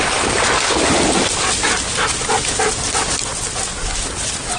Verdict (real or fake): real